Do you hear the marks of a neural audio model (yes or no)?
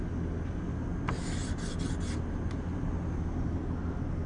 no